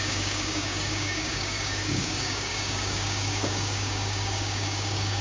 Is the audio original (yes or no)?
no